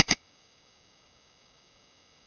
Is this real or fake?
fake